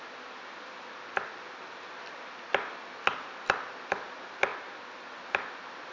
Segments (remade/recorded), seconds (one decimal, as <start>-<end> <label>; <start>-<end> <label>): 0.0-5.9 recorded